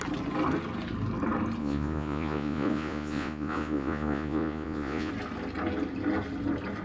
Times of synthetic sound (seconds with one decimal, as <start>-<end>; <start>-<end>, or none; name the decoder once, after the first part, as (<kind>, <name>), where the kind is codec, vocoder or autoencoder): 1.6-5.1 (vocoder, Vocos)